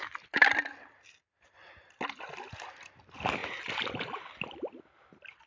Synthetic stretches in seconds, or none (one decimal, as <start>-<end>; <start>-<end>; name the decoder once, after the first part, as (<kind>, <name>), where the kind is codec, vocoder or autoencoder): none